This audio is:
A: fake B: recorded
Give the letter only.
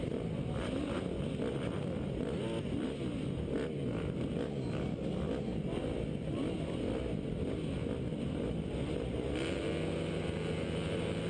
B